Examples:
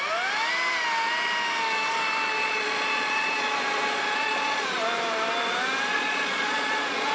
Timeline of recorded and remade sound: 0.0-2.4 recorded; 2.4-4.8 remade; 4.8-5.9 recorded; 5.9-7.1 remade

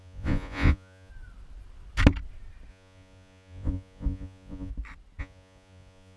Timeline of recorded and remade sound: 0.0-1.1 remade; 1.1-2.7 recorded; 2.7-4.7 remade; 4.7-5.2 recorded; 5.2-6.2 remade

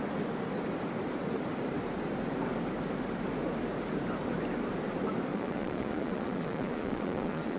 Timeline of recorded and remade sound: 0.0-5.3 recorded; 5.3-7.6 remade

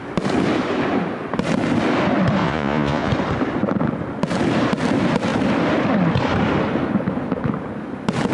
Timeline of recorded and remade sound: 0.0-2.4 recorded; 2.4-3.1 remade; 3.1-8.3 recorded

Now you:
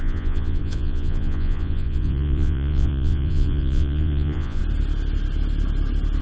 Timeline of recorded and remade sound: 0.0-4.6 remade; 4.6-6.2 recorded

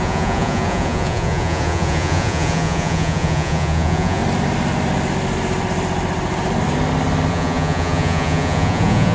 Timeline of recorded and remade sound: 0.0-4.2 remade; 4.2-7.3 recorded; 7.3-9.1 remade

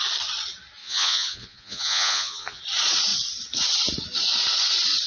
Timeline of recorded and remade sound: 0.0-0.8 recorded; 0.8-2.6 remade; 2.6-5.1 recorded

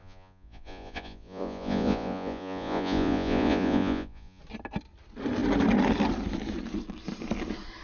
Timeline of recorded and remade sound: 0.0-4.4 remade; 4.4-7.8 recorded